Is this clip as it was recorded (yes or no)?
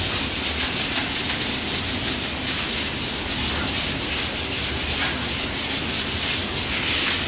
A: yes